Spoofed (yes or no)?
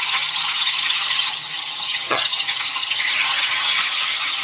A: yes